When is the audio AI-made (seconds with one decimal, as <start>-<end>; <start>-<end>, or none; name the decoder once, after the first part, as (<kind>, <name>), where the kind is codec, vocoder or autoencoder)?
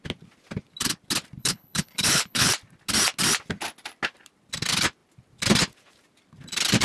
1.4-2.5 (codec, HILCodec)